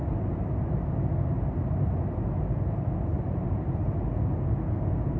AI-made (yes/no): no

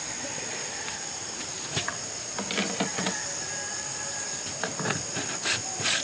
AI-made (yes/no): no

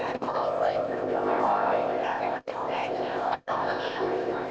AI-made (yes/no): yes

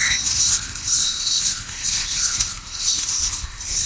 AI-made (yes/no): yes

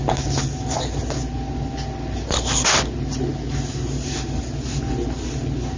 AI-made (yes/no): no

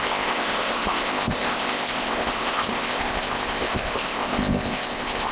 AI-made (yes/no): yes